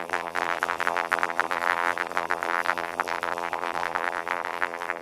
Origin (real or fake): fake